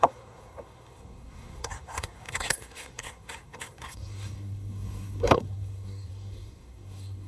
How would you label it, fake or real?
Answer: fake